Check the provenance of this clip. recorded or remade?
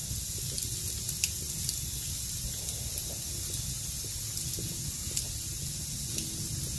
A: recorded